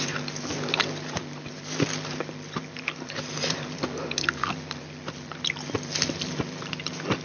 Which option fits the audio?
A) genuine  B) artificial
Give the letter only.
B